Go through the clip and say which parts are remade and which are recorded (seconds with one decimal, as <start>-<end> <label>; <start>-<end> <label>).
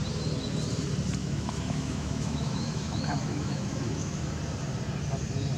0.0-1.2 recorded; 1.2-4.4 remade; 4.4-5.6 recorded